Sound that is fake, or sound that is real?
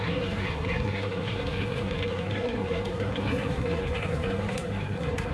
fake